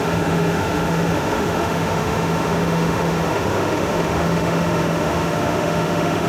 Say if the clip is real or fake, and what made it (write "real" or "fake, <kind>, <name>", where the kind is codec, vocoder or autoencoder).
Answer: fake, autoencoder, DAC-VAE